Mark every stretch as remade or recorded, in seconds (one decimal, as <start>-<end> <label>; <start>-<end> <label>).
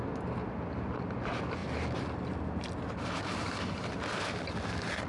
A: 0.0-5.1 recorded